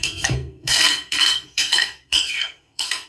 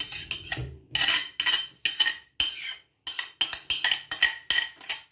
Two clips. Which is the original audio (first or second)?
second